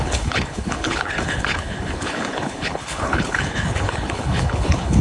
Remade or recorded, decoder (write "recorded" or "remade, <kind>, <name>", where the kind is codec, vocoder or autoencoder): remade, codec, HILCodec